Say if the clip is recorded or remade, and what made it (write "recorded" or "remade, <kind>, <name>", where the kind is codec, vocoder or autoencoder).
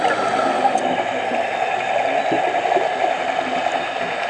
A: recorded